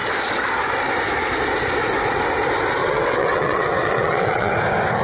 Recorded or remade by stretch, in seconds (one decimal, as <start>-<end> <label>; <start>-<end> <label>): 0.0-2.8 recorded; 2.8-4.5 remade; 4.5-5.0 recorded